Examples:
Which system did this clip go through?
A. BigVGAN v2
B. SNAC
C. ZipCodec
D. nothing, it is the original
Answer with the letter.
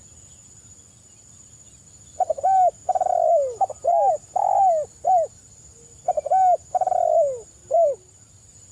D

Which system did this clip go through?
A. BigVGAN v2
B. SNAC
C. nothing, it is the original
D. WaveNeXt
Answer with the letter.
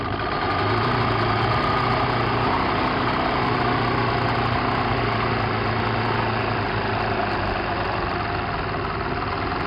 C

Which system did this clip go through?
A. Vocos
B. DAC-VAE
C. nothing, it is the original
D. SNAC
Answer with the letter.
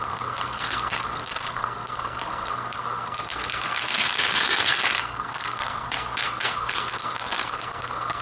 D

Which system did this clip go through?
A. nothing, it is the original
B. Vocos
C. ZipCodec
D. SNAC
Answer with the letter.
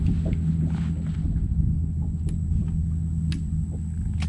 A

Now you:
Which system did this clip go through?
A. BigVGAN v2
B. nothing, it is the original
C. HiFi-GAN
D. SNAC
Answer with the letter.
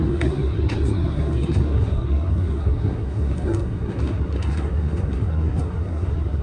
D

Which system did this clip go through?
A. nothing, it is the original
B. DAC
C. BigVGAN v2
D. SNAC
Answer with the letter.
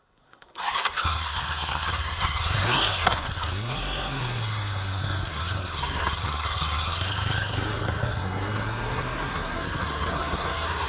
D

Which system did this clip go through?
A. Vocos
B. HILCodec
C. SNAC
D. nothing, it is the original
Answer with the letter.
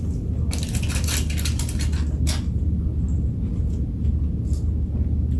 D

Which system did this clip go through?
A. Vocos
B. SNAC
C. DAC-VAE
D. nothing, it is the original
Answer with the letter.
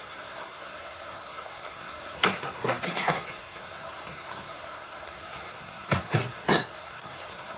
B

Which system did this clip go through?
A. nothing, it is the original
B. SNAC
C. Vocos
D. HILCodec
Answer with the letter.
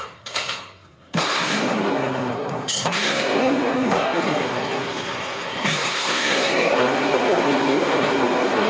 B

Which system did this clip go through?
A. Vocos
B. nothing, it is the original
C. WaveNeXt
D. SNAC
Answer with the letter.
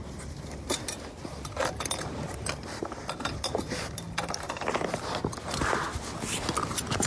B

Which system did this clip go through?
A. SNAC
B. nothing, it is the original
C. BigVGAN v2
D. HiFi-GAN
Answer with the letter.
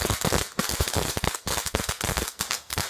A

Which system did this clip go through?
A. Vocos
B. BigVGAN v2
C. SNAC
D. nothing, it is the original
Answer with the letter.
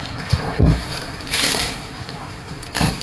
C